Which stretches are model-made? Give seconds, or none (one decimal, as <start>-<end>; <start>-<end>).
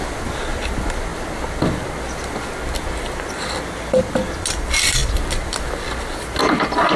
none